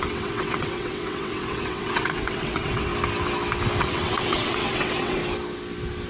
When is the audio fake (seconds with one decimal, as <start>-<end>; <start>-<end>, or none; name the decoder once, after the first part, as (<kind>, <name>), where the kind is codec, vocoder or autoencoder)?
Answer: 0.0-2.9 (vocoder, WaveNeXt); 3.8-5.2